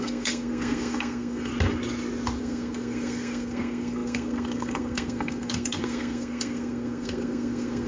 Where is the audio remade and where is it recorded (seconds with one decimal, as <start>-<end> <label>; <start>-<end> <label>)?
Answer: 0.0-1.5 remade; 1.5-2.4 recorded; 2.4-7.9 remade